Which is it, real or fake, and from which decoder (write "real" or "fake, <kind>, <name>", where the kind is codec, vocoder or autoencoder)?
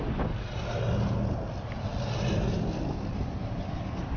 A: real